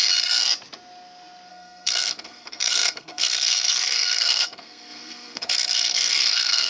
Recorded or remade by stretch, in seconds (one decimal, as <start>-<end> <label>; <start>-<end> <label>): 0.0-1.5 recorded; 1.5-6.7 remade